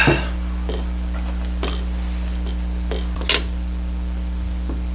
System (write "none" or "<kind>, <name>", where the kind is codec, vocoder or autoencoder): none